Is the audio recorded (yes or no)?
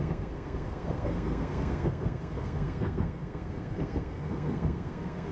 no